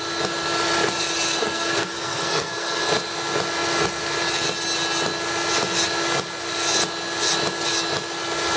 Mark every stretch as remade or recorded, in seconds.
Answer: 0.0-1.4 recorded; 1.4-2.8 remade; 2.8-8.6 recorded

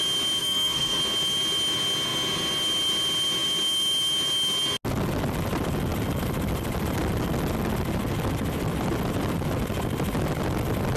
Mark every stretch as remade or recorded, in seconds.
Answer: 0.0-0.4 recorded; 0.4-1.0 remade; 1.0-11.0 recorded

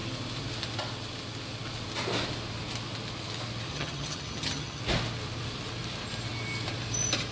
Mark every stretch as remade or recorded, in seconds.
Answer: 0.0-3.7 recorded; 3.7-4.8 remade; 4.8-7.3 recorded

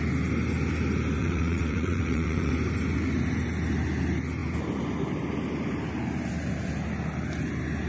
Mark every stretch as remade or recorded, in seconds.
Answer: 0.0-1.2 recorded; 1.2-2.5 remade; 2.5-7.9 recorded